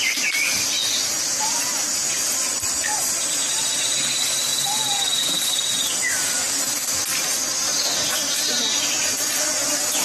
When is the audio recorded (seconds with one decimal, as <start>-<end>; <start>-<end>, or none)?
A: 0.0-4.5; 5.2-10.0